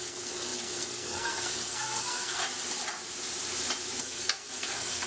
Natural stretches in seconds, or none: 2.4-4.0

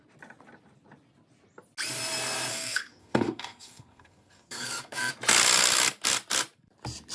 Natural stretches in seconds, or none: 0.0-2.5; 5.1-7.1

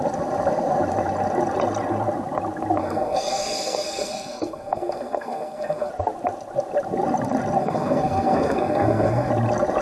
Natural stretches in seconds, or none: 0.0-2.8; 5.9-7.6; 9.3-9.8